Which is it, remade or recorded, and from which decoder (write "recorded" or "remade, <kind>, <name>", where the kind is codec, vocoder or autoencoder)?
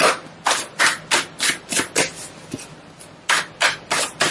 recorded